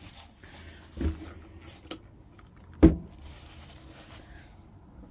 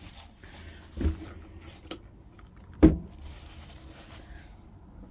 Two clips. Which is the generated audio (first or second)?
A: second